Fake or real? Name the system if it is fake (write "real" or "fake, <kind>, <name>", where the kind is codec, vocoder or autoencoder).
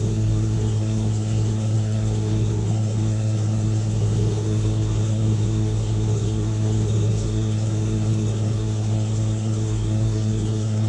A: fake, codec, SNAC